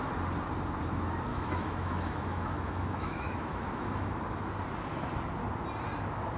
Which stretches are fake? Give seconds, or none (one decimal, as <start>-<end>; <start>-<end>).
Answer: 1.3-4.1